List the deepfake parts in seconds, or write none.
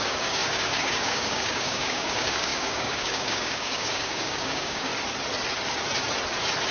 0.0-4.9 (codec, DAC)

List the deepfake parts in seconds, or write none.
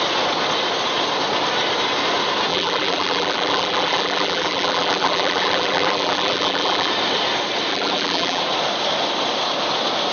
2.5-6.9 (vocoder, BigVGAN v2); 7.7-8.4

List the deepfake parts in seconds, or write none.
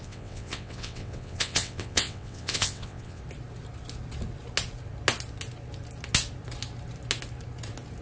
0.0-3.2 (vocoder, WaveNeXt)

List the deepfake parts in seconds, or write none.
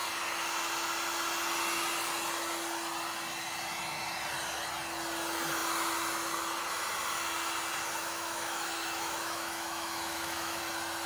8.0-10.6 (autoencoder, DAC-VAE)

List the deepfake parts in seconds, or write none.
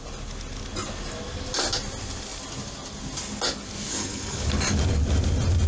3.9-4.4 (codec, SNAC)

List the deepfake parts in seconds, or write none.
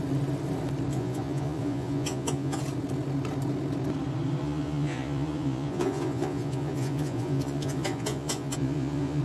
0.9-2.6 (vocoder, Vocos); 4.4-9.2